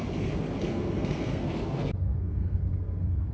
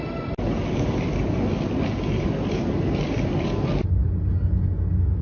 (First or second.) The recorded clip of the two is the second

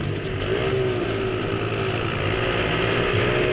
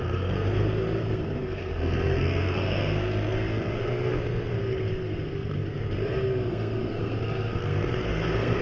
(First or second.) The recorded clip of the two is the first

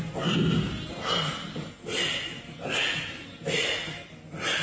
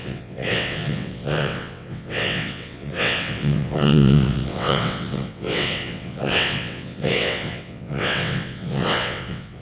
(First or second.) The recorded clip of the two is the first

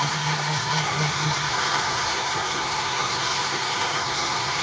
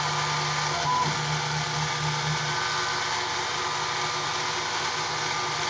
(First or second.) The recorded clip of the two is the second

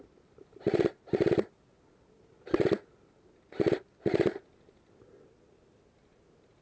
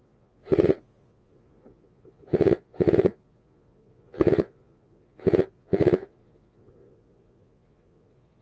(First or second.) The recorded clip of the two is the first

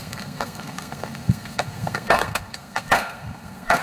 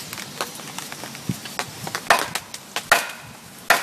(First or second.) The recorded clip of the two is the second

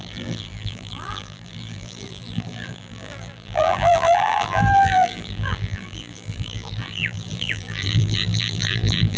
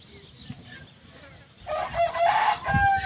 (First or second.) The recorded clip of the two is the second